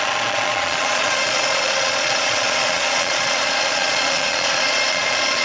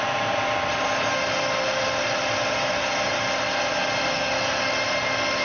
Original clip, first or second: second